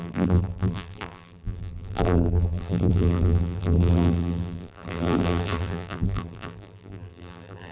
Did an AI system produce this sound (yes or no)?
yes